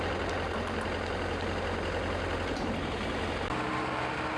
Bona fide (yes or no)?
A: yes